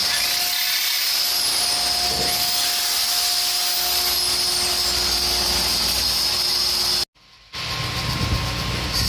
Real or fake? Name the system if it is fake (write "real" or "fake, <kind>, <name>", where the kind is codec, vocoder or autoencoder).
real